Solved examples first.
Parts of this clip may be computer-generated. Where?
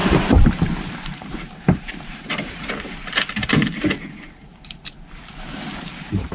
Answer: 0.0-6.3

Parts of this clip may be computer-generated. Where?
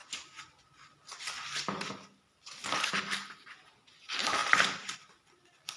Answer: 0.0-3.5; 4.4-5.8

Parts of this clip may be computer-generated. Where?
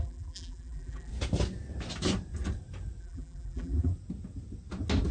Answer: 0.0-1.1; 3.0-3.9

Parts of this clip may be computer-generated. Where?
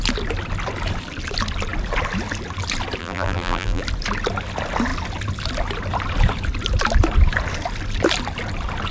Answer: 3.0-3.8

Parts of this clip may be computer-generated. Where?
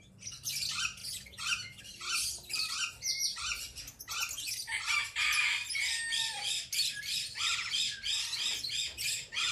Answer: none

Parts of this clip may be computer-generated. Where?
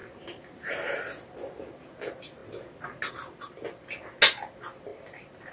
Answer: 4.9-5.5